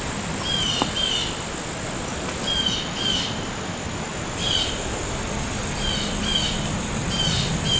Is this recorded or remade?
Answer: remade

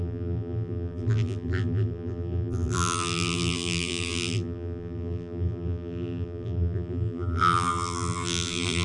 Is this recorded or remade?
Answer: remade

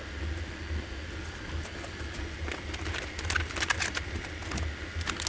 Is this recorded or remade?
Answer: recorded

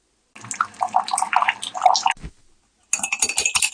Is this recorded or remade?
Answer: recorded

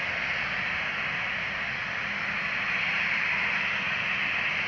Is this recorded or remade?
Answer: recorded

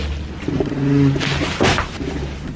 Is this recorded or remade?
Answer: recorded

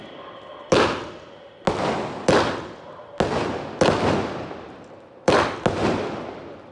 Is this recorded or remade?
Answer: recorded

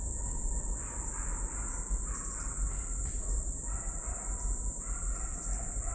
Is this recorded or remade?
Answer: recorded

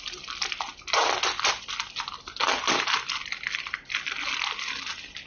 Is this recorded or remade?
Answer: recorded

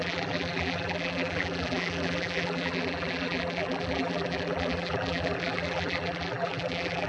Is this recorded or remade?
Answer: remade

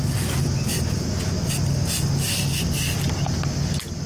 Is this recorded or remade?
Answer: recorded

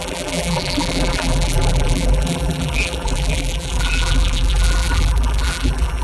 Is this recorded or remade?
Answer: remade